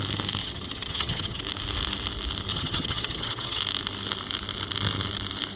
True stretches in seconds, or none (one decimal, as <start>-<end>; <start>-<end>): 0.0-0.4; 1.4-2.5; 3.6-5.6